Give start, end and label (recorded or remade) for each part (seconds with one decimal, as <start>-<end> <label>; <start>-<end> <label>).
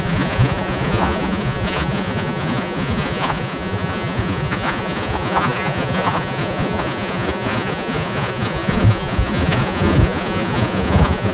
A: 0.0-11.3 remade